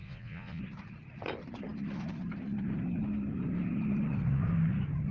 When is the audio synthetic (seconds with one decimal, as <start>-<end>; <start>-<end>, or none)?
0.0-0.6